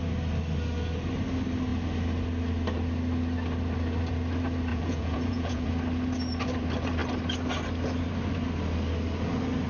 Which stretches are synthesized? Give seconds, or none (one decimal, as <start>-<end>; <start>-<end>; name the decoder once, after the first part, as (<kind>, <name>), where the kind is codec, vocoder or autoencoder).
4.7-5.7 (vocoder, Vocos)